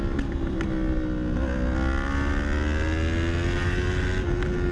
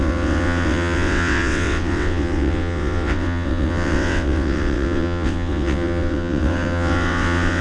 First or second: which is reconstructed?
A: second